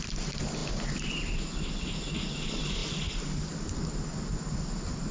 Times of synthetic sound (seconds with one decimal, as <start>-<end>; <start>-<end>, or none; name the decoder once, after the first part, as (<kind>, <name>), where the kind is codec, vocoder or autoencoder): none